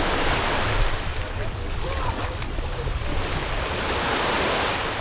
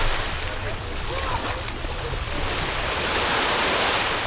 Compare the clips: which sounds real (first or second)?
second